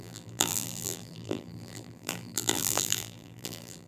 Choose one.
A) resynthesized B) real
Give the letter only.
A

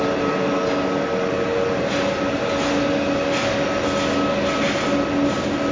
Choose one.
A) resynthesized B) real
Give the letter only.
B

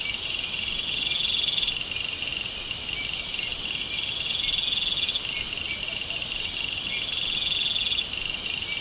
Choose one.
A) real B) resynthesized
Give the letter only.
A